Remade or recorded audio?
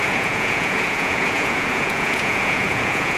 remade